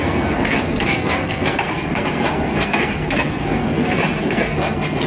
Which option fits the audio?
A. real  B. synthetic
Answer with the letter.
B